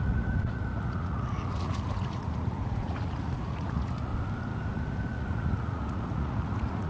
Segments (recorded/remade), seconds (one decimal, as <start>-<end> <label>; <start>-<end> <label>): 0.0-4.1 remade; 4.1-4.7 recorded; 4.7-6.9 remade